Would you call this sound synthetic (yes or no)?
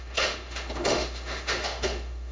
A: yes